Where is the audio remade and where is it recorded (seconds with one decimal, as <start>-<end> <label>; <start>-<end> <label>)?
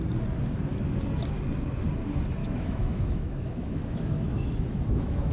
0.0-2.4 recorded; 2.4-5.3 remade